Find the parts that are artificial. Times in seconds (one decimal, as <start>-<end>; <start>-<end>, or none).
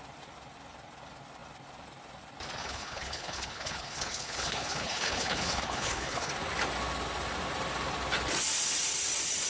2.6-6.3